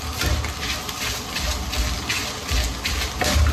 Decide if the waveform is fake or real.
real